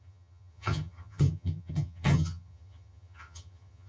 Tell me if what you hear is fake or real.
fake